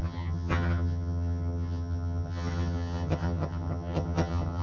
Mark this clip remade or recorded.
remade